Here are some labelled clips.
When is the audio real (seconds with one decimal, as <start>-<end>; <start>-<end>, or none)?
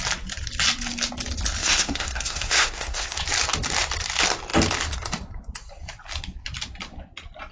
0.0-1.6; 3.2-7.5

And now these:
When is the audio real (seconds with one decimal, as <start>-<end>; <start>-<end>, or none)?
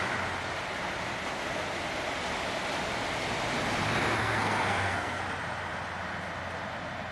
0.0-4.2; 5.2-7.1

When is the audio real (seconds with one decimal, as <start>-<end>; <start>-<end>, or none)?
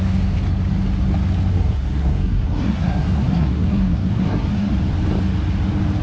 0.0-1.5; 4.7-6.0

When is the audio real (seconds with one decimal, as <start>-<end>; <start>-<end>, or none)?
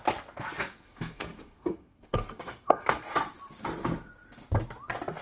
0.0-0.7; 3.1-5.2